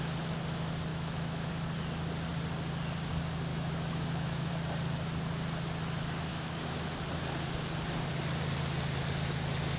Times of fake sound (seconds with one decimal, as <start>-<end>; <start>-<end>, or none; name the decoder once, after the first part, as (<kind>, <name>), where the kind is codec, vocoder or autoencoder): 0.9-1.5 (autoencoder, DAC-VAE); 3.5-4.5; 6.3-6.9